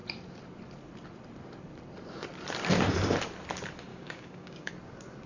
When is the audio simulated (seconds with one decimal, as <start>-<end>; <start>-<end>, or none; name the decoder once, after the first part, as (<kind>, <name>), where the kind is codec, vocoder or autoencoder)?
3.9-4.7 (codec, DAC)